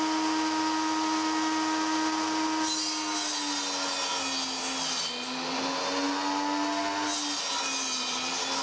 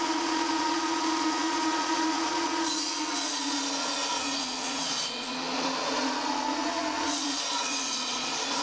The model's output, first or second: second